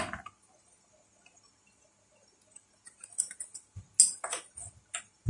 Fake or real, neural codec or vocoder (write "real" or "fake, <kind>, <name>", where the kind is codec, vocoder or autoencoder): real